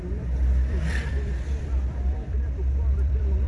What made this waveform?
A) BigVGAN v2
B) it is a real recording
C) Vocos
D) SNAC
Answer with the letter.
A